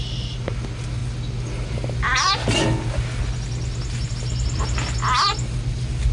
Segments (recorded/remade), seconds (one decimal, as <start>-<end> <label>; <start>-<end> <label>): 0.0-6.1 recorded